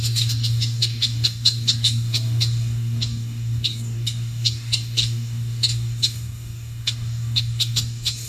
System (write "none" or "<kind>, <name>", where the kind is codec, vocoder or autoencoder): codec, DAC